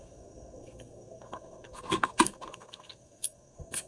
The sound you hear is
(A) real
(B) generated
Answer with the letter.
B